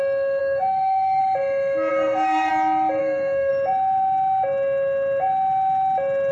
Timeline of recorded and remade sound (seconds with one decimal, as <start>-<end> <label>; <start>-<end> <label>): 0.0-0.4 recorded; 0.4-1.2 remade; 1.2-1.9 recorded; 1.9-2.5 remade; 2.5-3.0 recorded; 3.0-3.5 remade; 3.5-6.3 recorded